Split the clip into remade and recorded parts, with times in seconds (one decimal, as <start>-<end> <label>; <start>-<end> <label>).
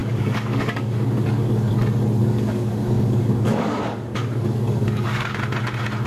0.0-1.7 remade; 1.7-2.2 recorded; 2.2-5.4 remade; 5.4-6.1 recorded